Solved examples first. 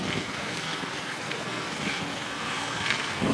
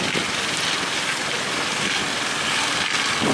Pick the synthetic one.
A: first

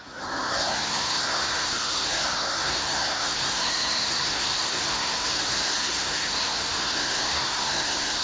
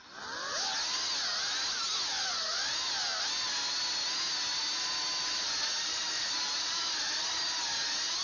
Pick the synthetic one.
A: first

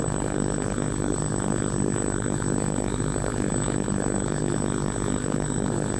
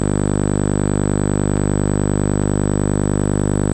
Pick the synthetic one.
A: first